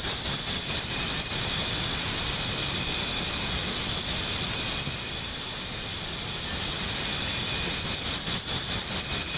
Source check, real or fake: real